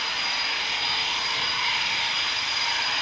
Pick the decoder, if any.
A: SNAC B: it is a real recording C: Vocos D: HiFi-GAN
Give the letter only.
B